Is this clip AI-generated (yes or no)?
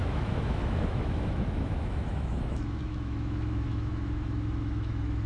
yes